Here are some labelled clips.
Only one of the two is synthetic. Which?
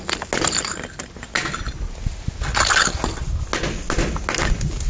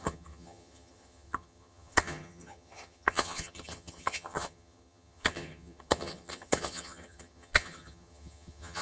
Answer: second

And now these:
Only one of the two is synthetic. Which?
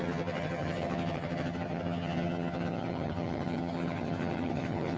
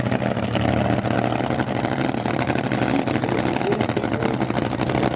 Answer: first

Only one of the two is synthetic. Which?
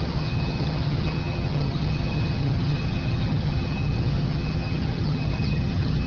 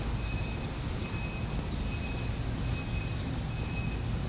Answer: first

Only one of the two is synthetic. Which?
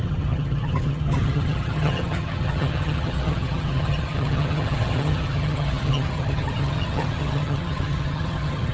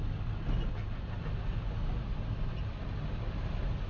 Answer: first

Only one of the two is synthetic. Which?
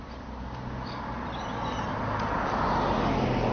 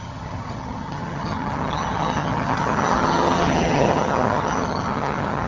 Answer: second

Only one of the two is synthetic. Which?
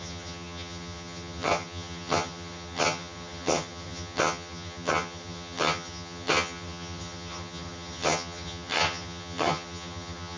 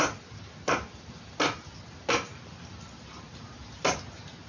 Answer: first